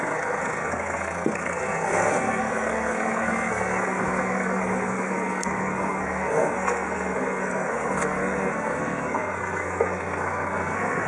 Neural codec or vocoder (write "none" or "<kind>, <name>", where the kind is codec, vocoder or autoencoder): codec, SNAC